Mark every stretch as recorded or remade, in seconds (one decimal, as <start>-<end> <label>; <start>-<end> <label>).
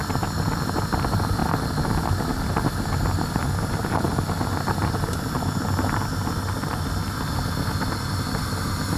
0.0-9.0 recorded